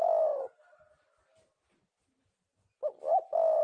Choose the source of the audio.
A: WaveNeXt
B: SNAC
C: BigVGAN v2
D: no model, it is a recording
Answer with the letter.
D